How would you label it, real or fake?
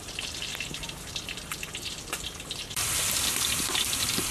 fake